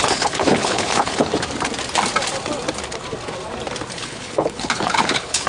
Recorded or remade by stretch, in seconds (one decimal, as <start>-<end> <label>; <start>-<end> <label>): 0.0-1.3 remade; 1.3-3.9 recorded; 3.9-5.5 remade